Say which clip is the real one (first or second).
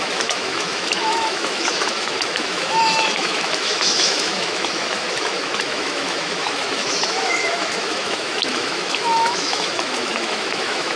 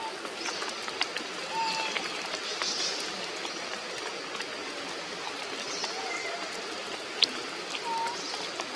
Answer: second